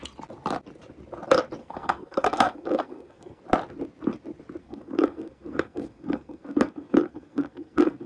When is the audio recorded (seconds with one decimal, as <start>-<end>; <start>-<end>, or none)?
0.0-1.6; 3.4-4.6